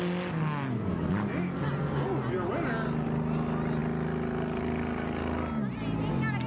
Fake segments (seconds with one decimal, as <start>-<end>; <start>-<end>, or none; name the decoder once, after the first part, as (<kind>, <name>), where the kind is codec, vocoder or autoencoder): none